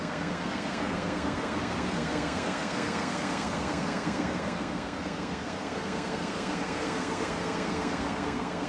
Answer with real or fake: fake